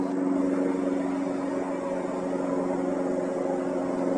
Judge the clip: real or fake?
real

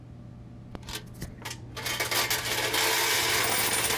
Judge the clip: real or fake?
real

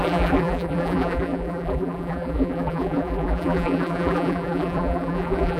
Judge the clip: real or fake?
fake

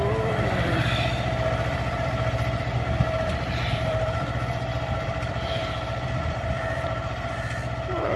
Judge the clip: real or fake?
fake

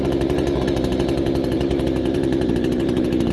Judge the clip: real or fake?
fake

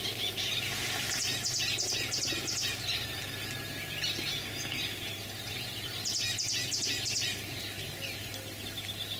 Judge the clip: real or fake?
real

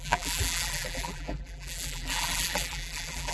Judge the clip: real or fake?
fake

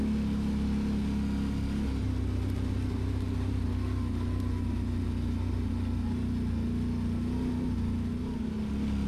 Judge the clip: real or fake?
real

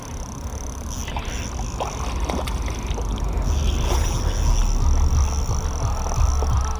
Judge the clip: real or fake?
real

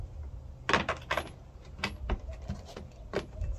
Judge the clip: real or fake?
real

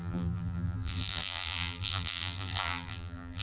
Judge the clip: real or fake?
fake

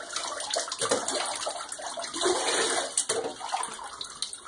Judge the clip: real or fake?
real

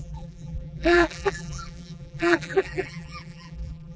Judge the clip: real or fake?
fake